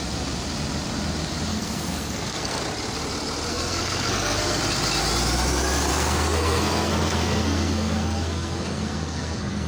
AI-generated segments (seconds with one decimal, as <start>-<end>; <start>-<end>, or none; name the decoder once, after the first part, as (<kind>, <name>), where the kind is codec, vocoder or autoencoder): 1.5-2.6 (codec, SNAC); 3.5-4.6; 5.9-9.7